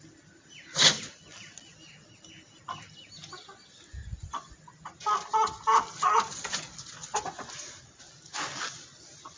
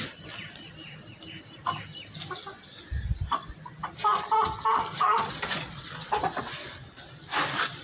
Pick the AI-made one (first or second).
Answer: second